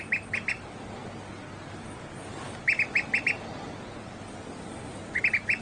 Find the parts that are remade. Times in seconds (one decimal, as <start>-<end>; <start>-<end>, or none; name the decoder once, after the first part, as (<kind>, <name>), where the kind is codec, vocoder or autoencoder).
none